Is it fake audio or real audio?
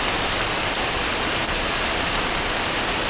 real